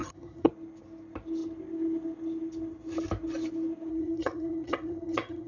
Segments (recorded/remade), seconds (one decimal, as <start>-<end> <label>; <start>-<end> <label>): 0.0-0.5 remade; 0.5-3.9 recorded; 3.9-5.5 remade